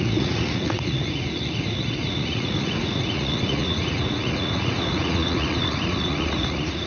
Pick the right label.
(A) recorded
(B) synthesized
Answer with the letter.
B